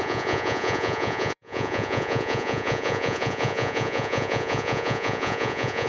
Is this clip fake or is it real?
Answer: fake